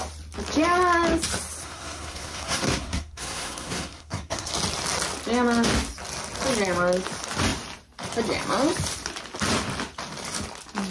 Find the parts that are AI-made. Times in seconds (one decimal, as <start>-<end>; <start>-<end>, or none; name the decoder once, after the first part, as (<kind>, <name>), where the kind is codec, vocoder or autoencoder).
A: 1.6-4.5 (codec, SNAC)